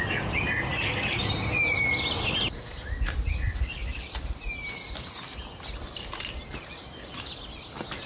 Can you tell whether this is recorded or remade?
recorded